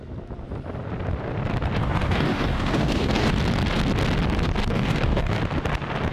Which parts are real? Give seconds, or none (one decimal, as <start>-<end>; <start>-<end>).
0.0-1.8; 3.4-4.6; 5.4-6.1